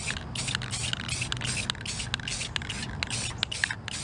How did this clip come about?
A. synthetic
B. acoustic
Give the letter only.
B